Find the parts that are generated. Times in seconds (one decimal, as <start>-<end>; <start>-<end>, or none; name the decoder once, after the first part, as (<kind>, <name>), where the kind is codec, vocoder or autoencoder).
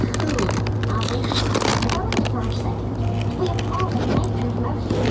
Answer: none